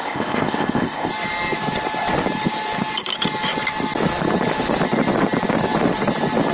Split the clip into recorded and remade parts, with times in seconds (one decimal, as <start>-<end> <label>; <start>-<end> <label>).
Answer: 0.0-1.1 remade; 1.1-6.5 recorded